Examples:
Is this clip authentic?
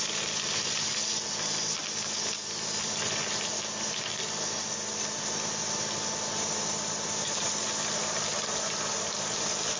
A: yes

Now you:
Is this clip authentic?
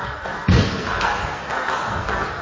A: no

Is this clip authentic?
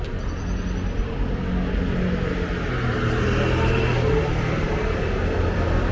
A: yes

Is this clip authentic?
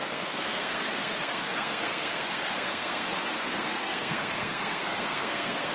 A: no